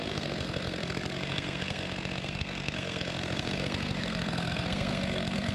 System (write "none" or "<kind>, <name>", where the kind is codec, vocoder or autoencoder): codec, SNAC